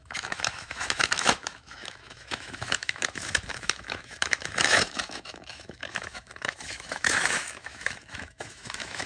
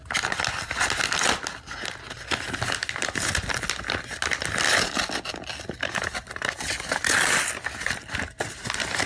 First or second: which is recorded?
second